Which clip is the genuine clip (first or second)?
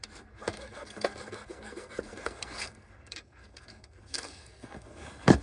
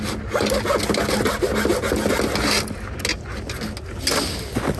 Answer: second